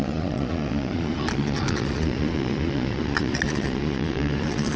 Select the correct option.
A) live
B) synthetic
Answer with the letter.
B